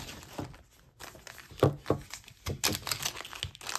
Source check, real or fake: real